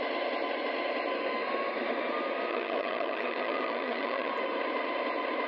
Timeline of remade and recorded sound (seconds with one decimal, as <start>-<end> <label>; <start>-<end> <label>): 0.0-2.5 recorded; 2.5-4.3 remade; 4.3-5.5 recorded